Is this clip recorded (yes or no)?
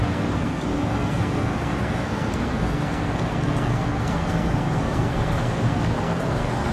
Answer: no